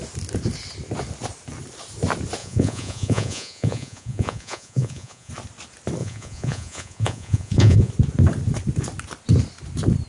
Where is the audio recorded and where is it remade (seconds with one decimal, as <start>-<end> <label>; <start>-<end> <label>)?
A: 0.0-2.4 recorded; 2.4-5.3 remade; 5.3-6.0 recorded; 6.0-7.9 remade; 7.9-10.1 recorded